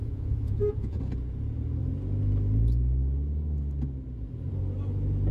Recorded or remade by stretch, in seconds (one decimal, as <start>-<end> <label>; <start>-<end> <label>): 0.0-1.0 remade; 1.0-5.3 recorded